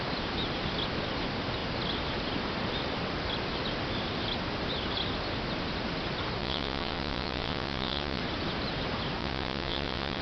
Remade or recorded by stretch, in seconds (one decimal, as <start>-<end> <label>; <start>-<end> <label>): 0.0-6.4 recorded; 6.4-8.2 remade; 8.2-9.2 recorded; 9.2-10.2 remade